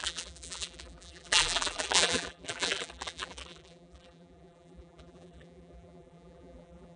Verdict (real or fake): fake